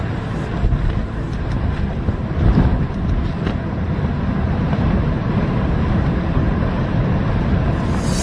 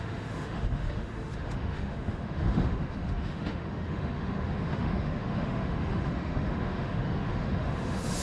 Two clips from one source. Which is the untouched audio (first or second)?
first